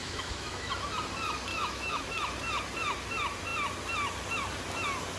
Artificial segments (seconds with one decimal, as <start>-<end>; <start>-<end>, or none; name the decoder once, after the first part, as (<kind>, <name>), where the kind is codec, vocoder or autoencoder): 0.0-0.7 (autoencoder, DAC-VAE); 1.5-2.0